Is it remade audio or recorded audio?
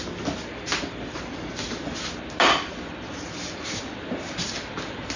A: recorded